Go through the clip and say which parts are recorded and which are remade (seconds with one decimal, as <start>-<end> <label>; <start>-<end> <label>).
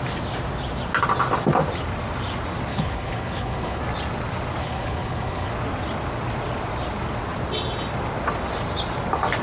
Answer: 0.0-2.7 recorded; 2.7-3.8 remade; 3.8-4.6 recorded; 4.6-5.5 remade; 5.5-9.4 recorded